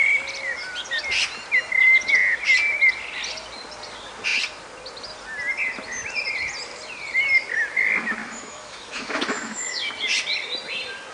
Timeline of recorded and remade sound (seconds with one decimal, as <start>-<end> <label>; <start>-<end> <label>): 0.0-8.2 recorded; 8.2-9.9 remade; 9.9-11.1 recorded